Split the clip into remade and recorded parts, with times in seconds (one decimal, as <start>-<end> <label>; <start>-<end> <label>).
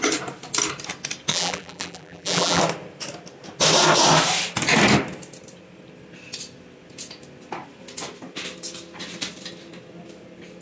0.0-1.3 recorded; 1.3-2.6 remade; 2.6-10.6 recorded